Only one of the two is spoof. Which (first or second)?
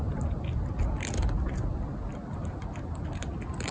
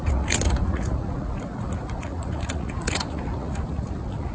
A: second